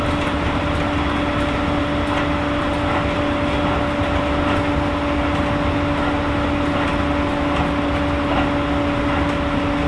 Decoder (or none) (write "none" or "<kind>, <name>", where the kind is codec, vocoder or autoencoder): none